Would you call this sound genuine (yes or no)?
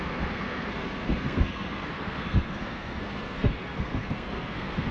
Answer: no